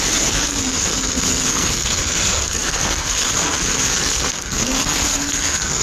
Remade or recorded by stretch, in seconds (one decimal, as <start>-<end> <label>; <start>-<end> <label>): 0.0-5.8 remade